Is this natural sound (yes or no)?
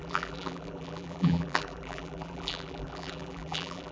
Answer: no